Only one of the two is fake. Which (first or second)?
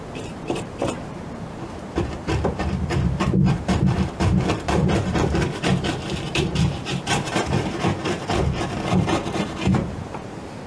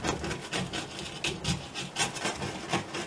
first